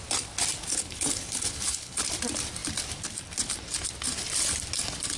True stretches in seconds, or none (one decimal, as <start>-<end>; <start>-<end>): 0.0-0.7; 2.0-5.2